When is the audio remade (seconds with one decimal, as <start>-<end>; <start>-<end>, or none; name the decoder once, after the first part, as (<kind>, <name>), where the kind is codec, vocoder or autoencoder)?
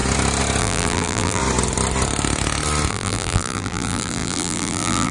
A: 0.6-1.4 (vocoder, BigVGAN v2); 2.9-5.1